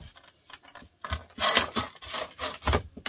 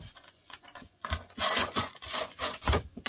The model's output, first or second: second